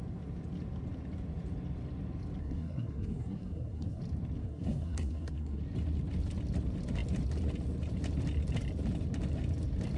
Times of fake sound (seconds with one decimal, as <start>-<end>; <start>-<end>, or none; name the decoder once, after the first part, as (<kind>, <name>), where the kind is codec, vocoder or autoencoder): 2.4-4.0 (codec, SNAC); 4.4-5.6

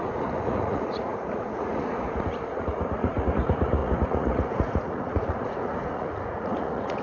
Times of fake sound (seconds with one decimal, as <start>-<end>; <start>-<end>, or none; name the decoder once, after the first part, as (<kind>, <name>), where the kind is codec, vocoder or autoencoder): 0.0-7.0 (vocoder, Vocos)

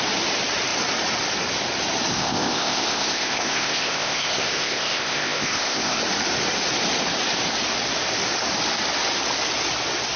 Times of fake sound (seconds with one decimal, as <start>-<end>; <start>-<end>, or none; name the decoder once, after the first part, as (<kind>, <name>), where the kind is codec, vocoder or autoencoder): 2.1-6.0 (codec, ZipCodec)

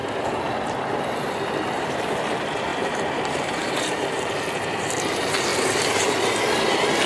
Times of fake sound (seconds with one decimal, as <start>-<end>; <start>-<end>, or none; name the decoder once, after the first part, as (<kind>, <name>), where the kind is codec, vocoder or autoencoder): 2.7-4.3 (vocoder, BigVGAN v2); 5.5-6.4

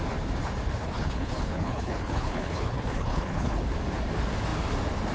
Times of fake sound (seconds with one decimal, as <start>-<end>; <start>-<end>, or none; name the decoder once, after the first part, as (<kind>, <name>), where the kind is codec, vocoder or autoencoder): 0.8-3.6 (codec, HILCodec)

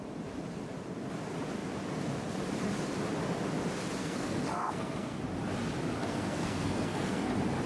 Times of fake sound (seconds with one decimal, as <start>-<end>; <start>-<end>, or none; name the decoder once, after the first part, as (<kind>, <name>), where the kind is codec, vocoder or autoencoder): 4.0-5.2 (codec, SNAC); 6.0-7.3

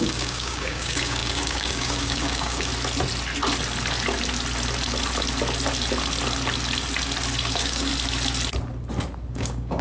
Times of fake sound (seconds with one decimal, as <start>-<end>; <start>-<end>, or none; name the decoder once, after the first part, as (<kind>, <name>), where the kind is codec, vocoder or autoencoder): 0.0-2.7 (codec, DAC); 7.5-7.9; 9.3-9.8